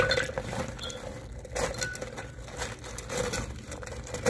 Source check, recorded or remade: recorded